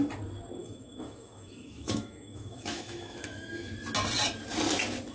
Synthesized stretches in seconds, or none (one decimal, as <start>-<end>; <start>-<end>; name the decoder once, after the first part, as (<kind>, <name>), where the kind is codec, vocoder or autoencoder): 0.6-3.7 (autoencoder, DAC-VAE)